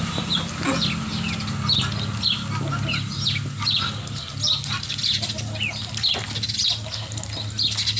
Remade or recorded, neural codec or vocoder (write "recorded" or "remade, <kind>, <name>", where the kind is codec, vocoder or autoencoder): recorded